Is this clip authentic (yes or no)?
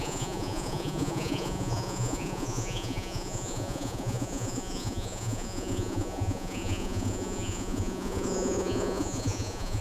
no